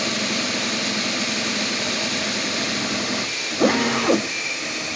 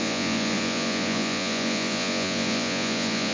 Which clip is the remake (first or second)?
second